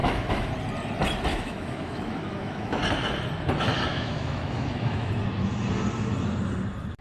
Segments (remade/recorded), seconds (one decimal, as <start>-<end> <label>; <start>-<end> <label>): 0.0-0.5 remade; 0.5-1.3 recorded; 1.3-2.8 remade; 2.8-3.9 recorded; 3.9-5.1 remade; 5.1-7.0 recorded